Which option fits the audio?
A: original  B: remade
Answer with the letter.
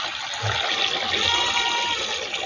A